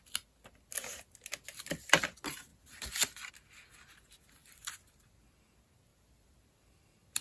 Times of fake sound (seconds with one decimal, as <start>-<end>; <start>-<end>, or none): 2.5-3.3; 4.4-5.3; 5.9-7.2